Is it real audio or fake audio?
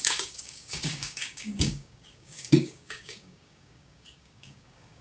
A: fake